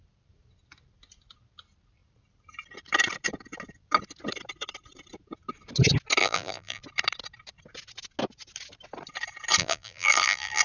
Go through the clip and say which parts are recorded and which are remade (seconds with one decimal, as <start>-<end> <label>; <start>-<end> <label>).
0.0-6.2 recorded; 6.2-6.8 remade; 6.8-9.6 recorded; 9.6-10.6 remade

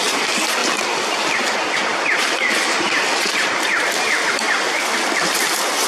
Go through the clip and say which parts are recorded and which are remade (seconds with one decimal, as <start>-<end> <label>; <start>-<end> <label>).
0.0-0.6 recorded; 0.6-1.3 remade; 1.3-1.9 recorded; 1.9-5.4 remade; 5.4-5.9 recorded

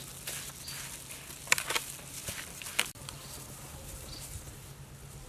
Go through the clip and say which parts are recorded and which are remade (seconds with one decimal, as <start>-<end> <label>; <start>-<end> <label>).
0.0-2.2 recorded; 2.2-3.9 remade; 3.9-5.3 recorded

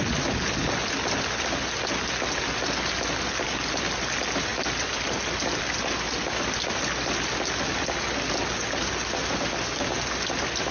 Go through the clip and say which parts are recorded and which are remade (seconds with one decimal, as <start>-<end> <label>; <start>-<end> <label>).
0.0-10.7 recorded

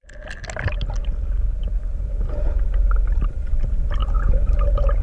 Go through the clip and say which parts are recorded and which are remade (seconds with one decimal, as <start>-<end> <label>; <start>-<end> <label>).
0.0-1.0 recorded; 1.0-3.3 remade; 3.3-4.0 recorded; 4.0-5.0 remade

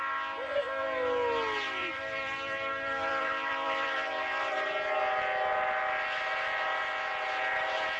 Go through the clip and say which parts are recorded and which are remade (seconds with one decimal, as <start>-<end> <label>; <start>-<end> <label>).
0.0-1.8 recorded; 1.8-4.7 remade; 4.7-8.0 recorded